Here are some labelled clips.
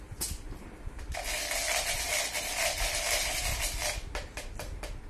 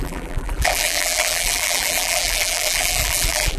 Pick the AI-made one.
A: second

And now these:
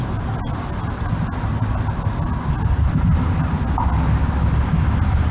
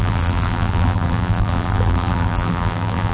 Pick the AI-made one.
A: second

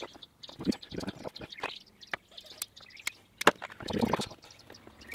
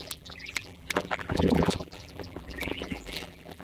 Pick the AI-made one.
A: second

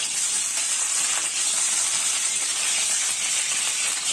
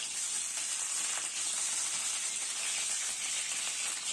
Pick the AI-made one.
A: first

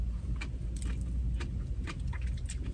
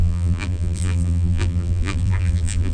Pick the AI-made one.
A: second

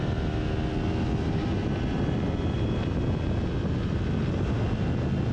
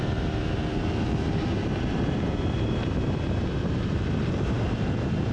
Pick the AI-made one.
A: second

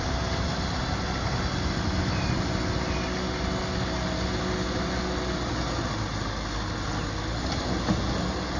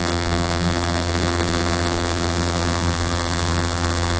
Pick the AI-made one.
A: second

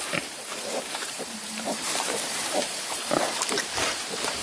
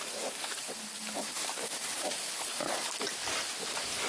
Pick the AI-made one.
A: first